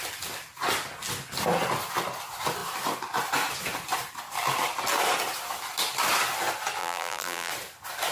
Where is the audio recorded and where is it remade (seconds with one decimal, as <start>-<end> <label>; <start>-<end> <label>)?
0.0-6.8 recorded; 6.8-7.5 remade; 7.5-8.1 recorded